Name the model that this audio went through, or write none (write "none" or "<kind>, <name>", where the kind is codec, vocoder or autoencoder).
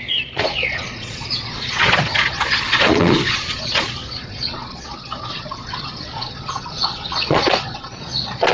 vocoder, Vocos